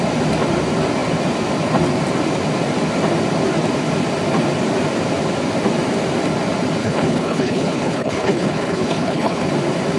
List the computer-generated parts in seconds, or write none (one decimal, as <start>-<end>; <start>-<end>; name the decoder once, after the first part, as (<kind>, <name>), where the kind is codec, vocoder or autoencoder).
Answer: 6.8-9.5 (codec, HILCodec)

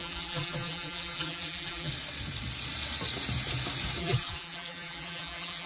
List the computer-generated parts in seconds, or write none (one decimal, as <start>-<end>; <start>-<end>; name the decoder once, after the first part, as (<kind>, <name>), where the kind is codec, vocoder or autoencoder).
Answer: 0.0-1.9 (vocoder, BigVGAN v2); 4.0-5.7